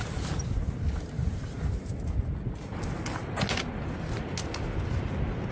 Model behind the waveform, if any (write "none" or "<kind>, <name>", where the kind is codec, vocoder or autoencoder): none